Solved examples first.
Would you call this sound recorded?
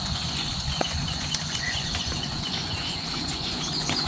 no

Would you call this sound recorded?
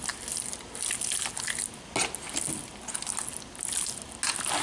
yes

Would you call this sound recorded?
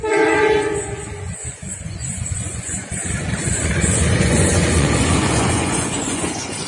no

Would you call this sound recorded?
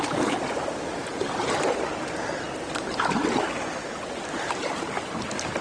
yes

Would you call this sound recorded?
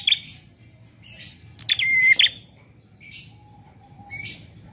yes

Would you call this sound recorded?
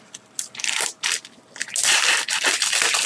yes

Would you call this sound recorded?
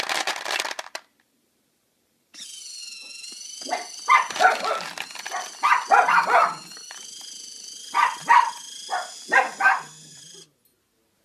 yes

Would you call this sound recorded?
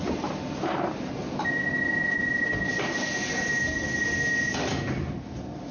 yes